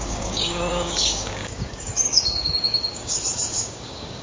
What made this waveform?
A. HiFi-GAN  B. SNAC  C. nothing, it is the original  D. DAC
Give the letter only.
D